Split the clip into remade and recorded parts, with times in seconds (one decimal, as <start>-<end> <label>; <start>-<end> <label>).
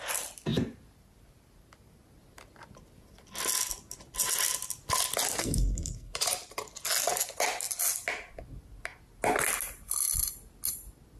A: 0.0-5.4 recorded; 5.4-6.1 remade; 6.1-11.2 recorded